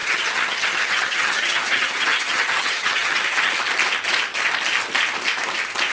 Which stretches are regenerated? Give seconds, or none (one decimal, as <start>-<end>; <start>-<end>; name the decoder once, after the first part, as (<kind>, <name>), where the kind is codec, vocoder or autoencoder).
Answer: 0.0-3.5 (vocoder, HiFi-GAN)